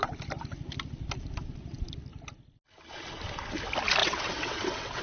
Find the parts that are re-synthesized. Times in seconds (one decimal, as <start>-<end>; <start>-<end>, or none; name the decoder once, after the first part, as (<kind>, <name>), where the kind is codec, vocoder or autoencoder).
4.0-5.0 (vocoder, WaveNeXt)